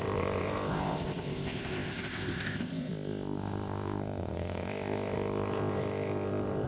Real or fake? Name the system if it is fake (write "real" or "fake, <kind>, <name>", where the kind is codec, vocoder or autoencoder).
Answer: fake, codec, ZipCodec